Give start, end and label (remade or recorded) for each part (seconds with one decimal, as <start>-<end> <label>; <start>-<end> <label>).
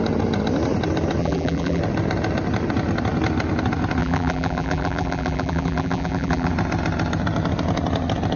0.0-1.2 recorded; 1.2-1.8 remade; 1.8-4.0 recorded; 4.0-6.5 remade; 6.5-8.4 recorded